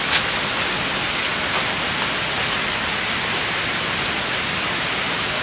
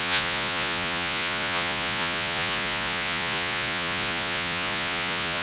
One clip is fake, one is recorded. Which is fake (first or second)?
second